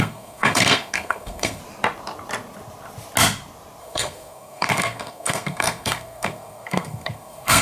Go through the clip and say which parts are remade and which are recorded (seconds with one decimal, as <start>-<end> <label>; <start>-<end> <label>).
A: 0.0-1.6 remade; 1.6-3.8 recorded; 3.8-7.6 remade